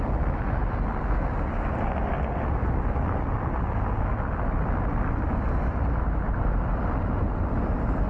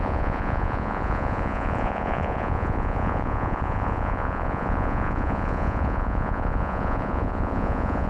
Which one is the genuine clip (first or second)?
first